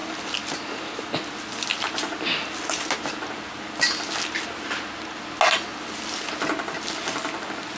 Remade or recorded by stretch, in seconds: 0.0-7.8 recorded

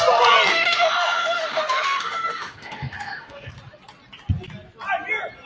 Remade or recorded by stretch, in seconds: 0.0-0.5 recorded; 0.5-3.5 remade; 3.5-5.5 recorded

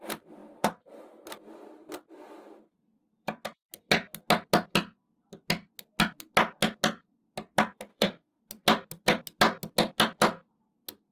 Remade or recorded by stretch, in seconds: 0.0-7.9 recorded; 7.9-8.4 remade; 8.4-11.1 recorded